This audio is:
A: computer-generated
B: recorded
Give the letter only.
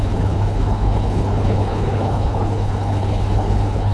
A